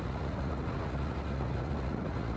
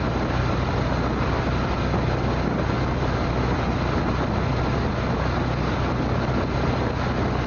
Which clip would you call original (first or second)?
second